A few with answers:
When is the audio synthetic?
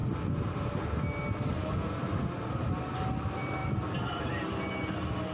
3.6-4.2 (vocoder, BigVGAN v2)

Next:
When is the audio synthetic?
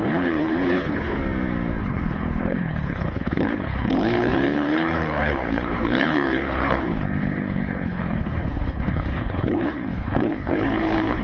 0.0-1.2 (codec, HILCodec); 1.8-11.2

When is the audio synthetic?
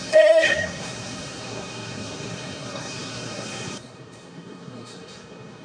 0.0-5.6 (codec, SNAC)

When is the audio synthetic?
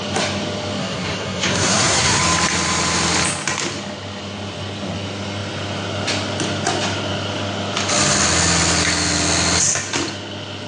0.8-2.2 (codec, SNAC)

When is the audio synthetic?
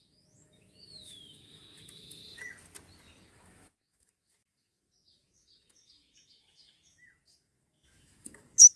0.0-2.2 (autoencoder, DAC-VAE); 3.3-8.8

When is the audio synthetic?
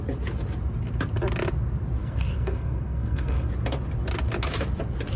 2.0-3.5 (codec, SNAC)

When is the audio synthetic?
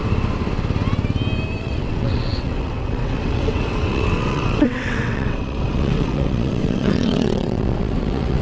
1.6-8.4 (vocoder, WaveNeXt)